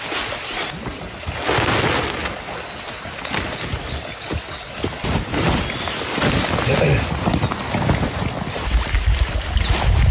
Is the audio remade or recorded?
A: recorded